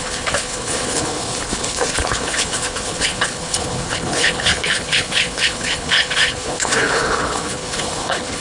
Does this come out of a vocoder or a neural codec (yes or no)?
yes